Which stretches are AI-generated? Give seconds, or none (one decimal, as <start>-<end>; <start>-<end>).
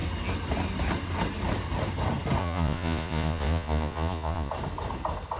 2.4-4.5